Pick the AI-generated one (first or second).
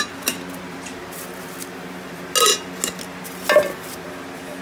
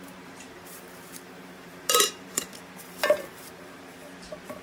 second